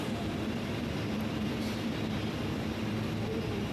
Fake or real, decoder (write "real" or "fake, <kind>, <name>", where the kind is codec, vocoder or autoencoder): fake, vocoder, BigVGAN v2